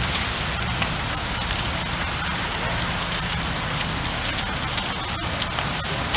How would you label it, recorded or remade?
recorded